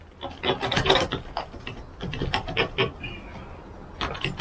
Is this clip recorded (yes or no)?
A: yes